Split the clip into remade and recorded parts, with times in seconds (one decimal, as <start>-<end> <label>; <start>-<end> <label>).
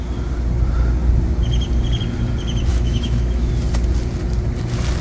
0.0-2.7 recorded; 2.7-3.5 remade; 3.5-5.0 recorded